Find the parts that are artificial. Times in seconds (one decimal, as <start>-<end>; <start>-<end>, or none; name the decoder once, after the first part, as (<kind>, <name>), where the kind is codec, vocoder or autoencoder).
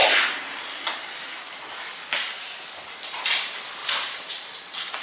3.8-4.3 (vocoder, BigVGAN v2)